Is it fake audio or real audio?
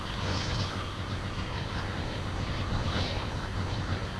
fake